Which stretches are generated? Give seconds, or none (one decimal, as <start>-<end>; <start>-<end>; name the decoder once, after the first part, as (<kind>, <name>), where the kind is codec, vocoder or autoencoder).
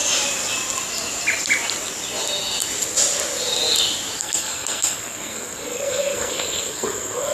4.2-7.3 (codec, SNAC)